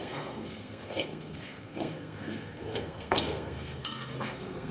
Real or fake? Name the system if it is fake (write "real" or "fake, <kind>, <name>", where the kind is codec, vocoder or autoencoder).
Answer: fake, codec, SNAC